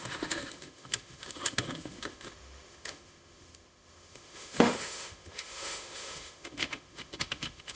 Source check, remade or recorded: remade